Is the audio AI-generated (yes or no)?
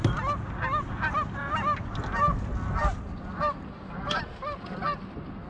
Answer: no